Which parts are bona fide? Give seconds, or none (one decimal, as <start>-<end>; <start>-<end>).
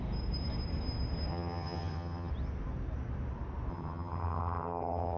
0.0-1.3; 2.3-3.7